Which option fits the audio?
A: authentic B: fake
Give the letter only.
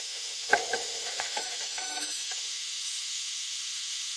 B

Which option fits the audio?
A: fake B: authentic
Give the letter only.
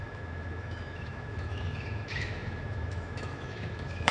A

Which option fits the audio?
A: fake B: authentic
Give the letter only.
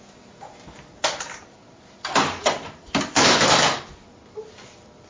B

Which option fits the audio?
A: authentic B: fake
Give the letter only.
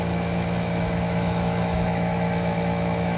B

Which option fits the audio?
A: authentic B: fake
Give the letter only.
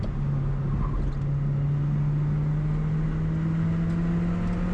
A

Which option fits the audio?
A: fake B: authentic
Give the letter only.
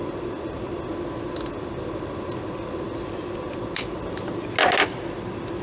B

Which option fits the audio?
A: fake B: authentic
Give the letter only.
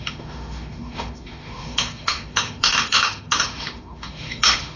A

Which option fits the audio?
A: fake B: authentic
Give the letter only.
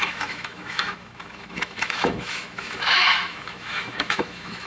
A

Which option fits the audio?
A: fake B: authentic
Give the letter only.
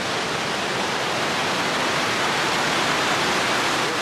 B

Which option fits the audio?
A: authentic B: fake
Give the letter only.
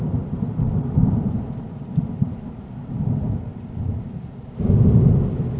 A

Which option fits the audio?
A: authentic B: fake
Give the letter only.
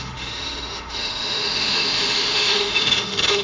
B